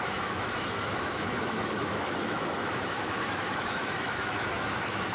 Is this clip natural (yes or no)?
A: no